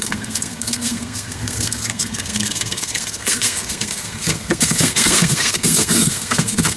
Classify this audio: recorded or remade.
remade